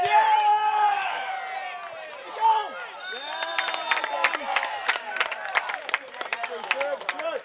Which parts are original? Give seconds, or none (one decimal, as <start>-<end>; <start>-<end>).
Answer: 0.0-0.5; 1.3-7.4